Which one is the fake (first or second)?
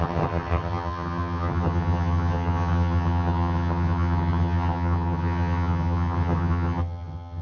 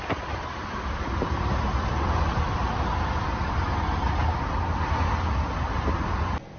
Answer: first